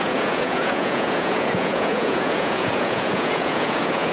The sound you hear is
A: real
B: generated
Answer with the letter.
B